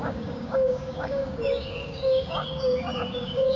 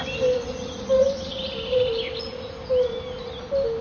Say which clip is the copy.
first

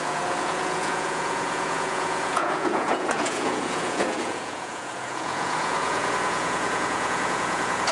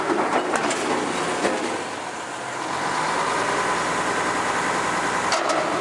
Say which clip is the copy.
first